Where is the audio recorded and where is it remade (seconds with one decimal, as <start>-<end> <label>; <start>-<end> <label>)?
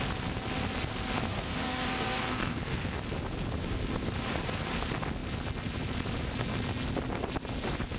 0.0-1.3 recorded; 1.3-3.0 remade; 3.0-8.0 recorded